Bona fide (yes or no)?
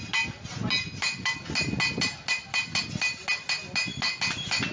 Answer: yes